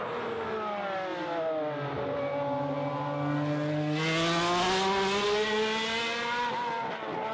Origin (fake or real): real